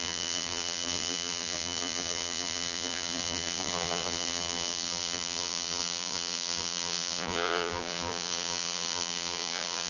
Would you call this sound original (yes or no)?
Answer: no